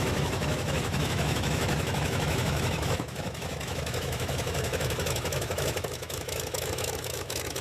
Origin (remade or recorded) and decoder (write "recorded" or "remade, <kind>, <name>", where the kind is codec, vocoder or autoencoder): remade, autoencoder, DAC-VAE